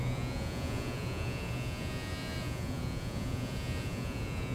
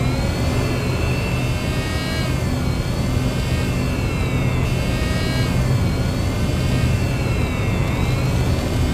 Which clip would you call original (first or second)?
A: second